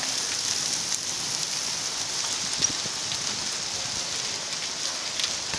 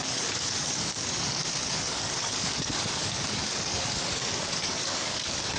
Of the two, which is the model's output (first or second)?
second